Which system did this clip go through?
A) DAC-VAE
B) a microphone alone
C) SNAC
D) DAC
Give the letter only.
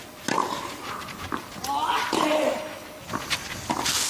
B